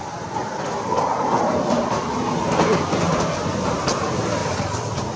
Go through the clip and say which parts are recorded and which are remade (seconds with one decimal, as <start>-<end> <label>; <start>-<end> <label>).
0.0-0.4 recorded; 0.4-1.5 remade; 1.5-4.4 recorded; 4.4-5.2 remade